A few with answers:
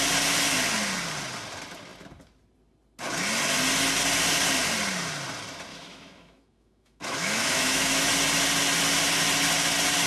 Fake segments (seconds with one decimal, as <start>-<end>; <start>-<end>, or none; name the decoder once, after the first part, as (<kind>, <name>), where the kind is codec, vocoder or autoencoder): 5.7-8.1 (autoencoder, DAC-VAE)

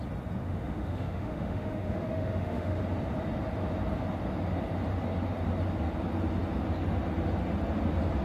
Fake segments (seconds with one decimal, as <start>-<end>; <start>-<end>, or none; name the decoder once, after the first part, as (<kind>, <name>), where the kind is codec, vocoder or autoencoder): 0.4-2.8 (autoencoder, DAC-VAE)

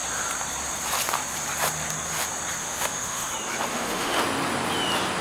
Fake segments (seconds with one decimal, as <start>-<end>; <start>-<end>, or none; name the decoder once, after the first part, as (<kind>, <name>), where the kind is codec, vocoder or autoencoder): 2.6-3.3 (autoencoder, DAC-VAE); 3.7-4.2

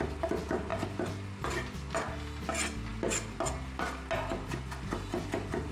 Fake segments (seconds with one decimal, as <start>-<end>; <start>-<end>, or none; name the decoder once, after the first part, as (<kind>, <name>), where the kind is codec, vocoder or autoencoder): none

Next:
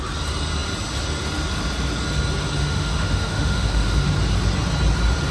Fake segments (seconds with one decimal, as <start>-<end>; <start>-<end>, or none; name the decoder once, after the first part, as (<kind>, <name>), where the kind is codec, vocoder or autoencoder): 2.6-4.1 (autoencoder, DAC-VAE)